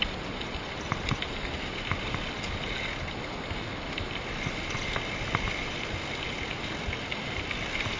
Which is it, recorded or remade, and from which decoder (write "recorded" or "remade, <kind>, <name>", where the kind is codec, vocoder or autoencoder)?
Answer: recorded